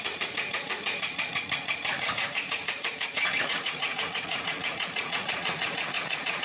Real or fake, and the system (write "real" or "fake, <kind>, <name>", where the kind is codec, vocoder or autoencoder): fake, vocoder, Vocos